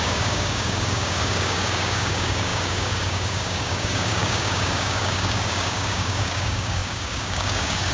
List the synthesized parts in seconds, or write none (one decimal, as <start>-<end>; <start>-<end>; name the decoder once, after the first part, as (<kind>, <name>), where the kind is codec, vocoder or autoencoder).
0.0-7.9 (codec, DAC)